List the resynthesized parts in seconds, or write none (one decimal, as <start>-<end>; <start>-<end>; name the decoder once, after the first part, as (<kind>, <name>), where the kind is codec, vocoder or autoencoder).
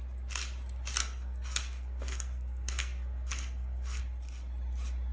1.0-4.0 (codec, SNAC)